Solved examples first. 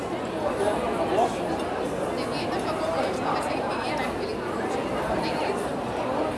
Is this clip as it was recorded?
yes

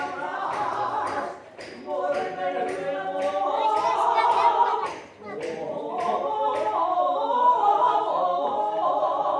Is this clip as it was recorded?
no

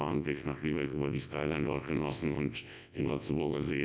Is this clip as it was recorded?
no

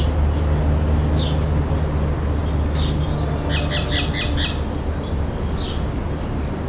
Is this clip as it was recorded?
yes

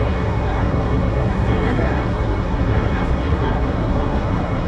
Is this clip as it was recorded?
no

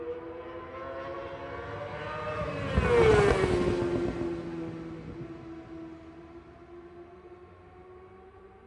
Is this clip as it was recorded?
yes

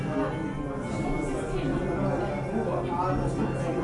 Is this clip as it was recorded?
yes